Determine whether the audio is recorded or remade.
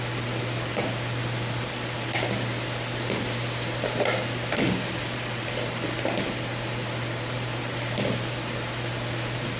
recorded